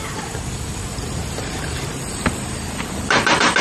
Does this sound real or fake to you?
real